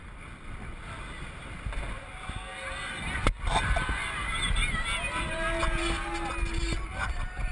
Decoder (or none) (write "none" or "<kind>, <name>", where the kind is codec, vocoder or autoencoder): none